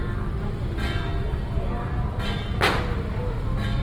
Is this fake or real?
real